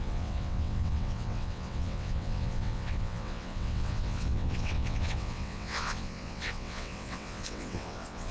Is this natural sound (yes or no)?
no